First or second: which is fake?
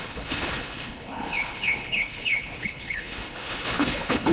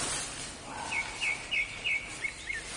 first